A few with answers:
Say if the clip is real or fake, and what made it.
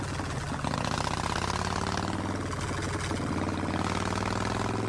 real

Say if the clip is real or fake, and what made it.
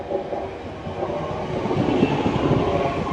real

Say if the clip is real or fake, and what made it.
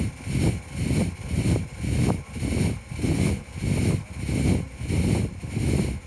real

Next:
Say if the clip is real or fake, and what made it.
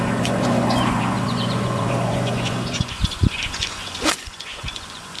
fake, vocoder, Vocos